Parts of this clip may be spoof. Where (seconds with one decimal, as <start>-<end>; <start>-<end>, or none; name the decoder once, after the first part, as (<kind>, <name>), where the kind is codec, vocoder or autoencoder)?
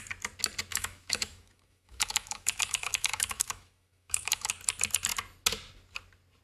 0.7-4.5 (autoencoder, DAC-VAE)